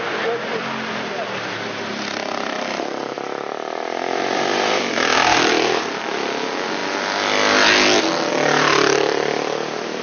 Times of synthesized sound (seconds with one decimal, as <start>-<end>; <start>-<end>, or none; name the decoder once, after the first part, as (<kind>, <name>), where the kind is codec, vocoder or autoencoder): 1.9-6.0 (vocoder, BigVGAN v2)